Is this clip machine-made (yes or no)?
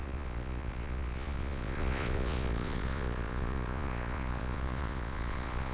yes